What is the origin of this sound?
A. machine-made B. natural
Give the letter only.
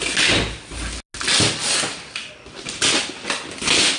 B